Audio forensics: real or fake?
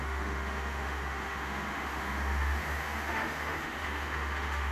fake